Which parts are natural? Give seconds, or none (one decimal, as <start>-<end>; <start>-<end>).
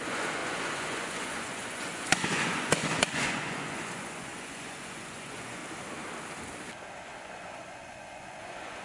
5.6-7.2